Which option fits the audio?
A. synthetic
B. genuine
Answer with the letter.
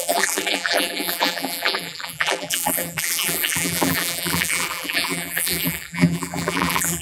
A